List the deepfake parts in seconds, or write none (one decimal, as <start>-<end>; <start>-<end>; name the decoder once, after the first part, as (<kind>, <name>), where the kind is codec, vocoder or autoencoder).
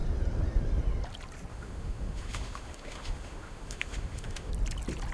1.5-4.5 (autoencoder, DAC-VAE)